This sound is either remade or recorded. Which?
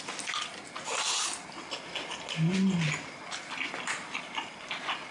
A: recorded